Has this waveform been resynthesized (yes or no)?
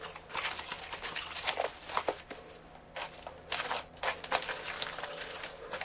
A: no